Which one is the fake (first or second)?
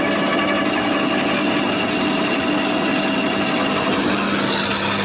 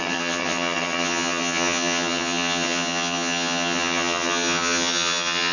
second